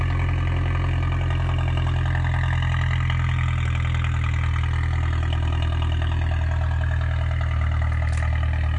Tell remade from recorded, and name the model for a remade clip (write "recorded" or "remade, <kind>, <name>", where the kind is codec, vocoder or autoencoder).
recorded